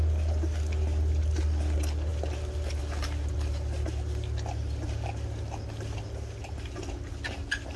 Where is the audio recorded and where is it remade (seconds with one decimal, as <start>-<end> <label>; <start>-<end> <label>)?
0.0-7.8 recorded